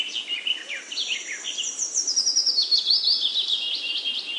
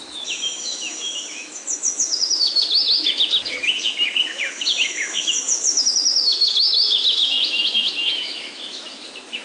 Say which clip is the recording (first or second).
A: first